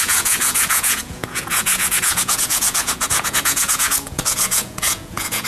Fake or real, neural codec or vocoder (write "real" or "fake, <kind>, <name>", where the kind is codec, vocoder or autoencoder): fake, vocoder, Vocos